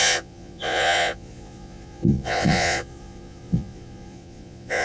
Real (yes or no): no